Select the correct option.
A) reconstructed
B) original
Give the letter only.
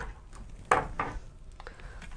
B